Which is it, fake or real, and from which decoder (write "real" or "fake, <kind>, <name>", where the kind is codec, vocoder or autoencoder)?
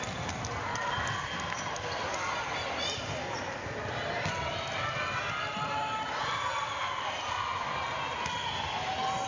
real